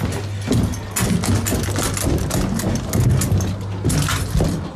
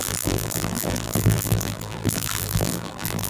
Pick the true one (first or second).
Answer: first